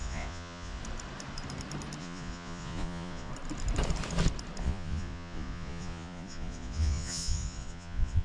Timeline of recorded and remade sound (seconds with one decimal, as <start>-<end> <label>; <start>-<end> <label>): 0.0-0.8 remade; 0.8-2.0 recorded; 2.0-3.3 remade; 3.3-4.6 recorded; 4.6-8.2 remade

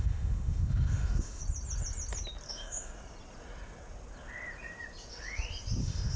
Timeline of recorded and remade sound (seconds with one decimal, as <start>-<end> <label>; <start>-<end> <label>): 0.0-1.4 remade; 1.4-2.5 recorded; 2.5-2.9 remade; 2.9-5.8 recorded; 5.8-6.2 remade